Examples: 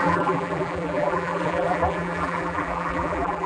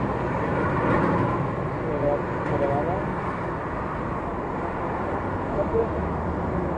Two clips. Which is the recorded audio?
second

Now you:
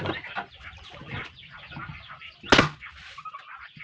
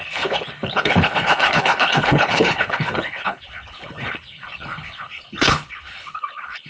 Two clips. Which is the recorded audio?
first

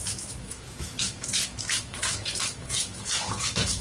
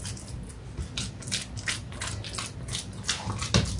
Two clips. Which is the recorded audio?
second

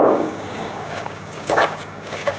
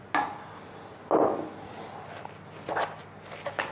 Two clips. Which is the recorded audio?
second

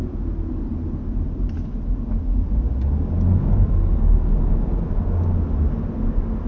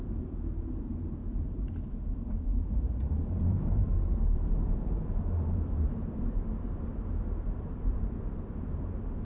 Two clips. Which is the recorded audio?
first